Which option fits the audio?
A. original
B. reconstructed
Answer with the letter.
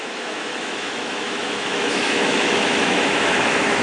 B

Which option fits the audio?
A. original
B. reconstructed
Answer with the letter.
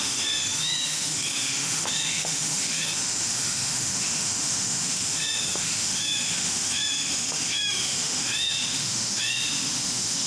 B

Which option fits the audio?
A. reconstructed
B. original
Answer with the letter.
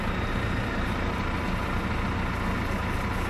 B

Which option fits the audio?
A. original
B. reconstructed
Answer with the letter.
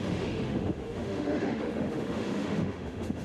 B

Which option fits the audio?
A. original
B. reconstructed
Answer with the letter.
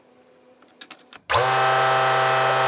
A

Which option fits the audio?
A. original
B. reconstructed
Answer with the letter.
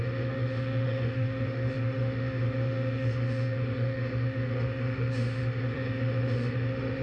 B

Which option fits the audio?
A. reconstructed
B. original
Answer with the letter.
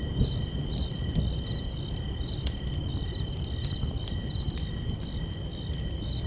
B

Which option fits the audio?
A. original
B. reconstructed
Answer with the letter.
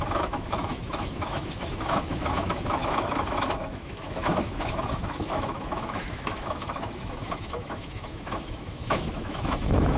B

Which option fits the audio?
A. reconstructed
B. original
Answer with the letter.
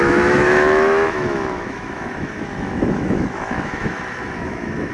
A